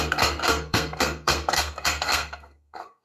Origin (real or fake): fake